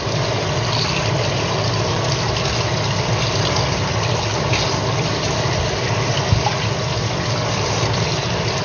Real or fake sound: real